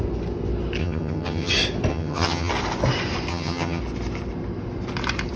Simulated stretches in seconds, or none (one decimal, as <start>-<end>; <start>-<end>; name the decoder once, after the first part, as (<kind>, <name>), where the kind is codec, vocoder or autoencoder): 0.8-1.5 (vocoder, HiFi-GAN); 1.9-2.5; 3.3-3.8

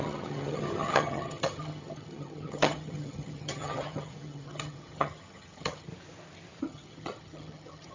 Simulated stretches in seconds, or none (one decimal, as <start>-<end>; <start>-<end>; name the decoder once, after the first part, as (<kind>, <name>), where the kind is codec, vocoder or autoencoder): 0.0-5.9 (vocoder, HiFi-GAN); 6.6-7.9

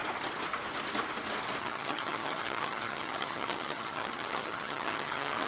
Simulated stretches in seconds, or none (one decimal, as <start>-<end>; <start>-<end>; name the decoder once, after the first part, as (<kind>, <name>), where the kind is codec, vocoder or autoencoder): 1.6-5.5 (vocoder, HiFi-GAN)

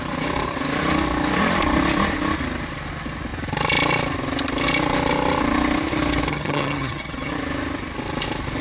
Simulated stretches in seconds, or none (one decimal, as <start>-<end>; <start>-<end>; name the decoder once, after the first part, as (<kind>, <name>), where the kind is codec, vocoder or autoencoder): 6.3-7.3 (vocoder, HiFi-GAN)

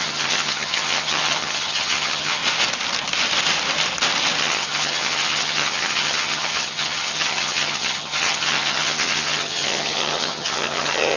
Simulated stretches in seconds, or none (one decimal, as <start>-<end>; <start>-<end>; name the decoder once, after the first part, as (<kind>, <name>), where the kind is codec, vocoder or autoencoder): 0.0-2.4 (vocoder, HiFi-GAN); 4.4-11.2